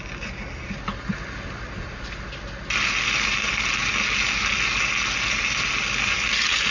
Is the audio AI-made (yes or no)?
no